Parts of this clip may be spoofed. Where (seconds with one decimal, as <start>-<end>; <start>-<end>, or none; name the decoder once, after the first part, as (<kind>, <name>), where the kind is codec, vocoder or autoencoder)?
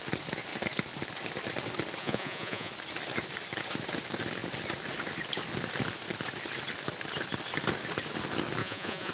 2.0-2.7 (vocoder, Vocos); 8.6-9.1